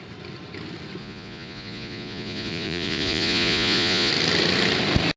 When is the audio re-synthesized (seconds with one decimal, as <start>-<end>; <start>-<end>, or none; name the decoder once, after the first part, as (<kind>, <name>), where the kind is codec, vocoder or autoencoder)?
1.0-4.1 (vocoder, Vocos)